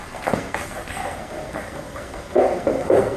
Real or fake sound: fake